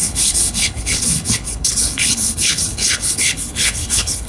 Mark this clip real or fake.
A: fake